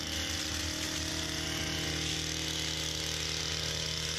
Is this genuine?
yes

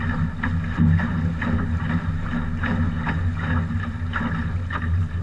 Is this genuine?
yes